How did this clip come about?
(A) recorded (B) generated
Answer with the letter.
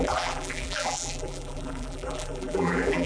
B